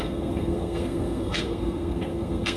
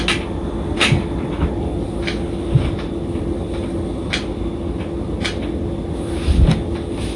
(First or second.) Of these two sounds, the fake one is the first